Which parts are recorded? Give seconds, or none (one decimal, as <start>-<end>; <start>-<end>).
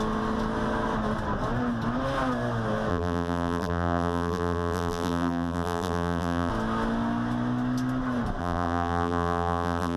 0.0-2.9; 6.5-8.4